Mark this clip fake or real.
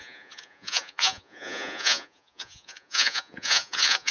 fake